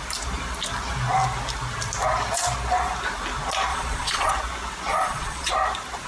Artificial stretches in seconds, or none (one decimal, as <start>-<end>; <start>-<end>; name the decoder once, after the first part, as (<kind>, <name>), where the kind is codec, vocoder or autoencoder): 3.7-4.3 (vocoder, Vocos); 4.9-5.5

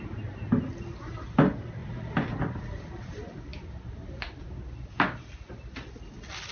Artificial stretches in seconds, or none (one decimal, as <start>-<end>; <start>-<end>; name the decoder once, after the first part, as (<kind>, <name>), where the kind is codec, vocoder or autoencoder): 1.8-2.7 (vocoder, BigVGAN v2)

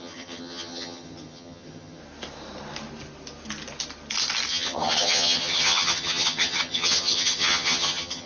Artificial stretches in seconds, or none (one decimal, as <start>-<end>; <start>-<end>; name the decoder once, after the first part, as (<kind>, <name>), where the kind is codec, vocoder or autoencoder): 0.0-2.0 (vocoder, HiFi-GAN); 4.5-8.3

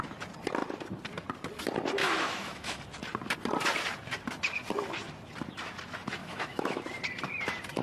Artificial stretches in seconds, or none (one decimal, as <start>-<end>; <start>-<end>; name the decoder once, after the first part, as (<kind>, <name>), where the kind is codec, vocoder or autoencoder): 2.0-2.8 (autoencoder, DAC-VAE); 6.2-6.8

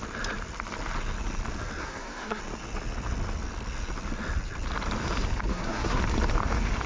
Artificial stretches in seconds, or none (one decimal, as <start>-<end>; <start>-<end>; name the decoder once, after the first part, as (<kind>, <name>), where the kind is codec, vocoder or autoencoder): 1.8-2.4 (codec, SNAC); 5.5-6.0

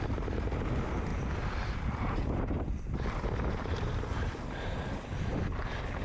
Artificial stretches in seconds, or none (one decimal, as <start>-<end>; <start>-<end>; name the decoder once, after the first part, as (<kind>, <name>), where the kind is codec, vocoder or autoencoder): 1.1-4.1 (vocoder, BigVGAN v2)